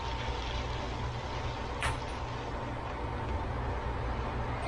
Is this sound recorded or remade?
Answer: recorded